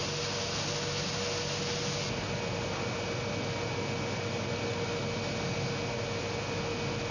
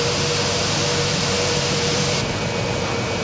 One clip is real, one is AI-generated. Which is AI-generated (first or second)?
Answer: second